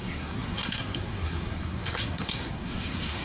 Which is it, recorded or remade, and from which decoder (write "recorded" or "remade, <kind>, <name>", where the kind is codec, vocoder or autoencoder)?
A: remade, codec, SNAC